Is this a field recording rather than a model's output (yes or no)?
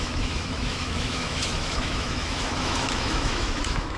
no